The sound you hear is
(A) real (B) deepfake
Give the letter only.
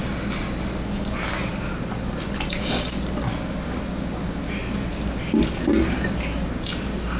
A